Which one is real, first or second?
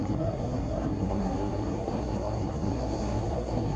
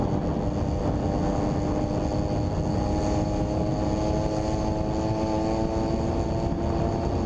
second